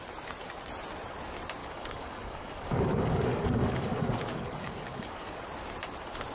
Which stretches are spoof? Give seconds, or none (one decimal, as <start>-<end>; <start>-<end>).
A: 1.6-5.4